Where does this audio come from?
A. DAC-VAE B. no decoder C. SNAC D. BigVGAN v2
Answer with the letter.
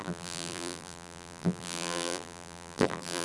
D